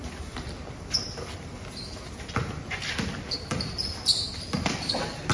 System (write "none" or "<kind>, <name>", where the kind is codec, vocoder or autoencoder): none